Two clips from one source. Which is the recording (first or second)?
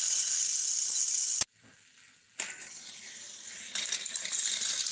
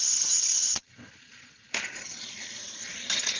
first